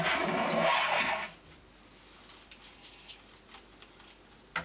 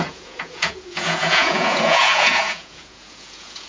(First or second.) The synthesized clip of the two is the second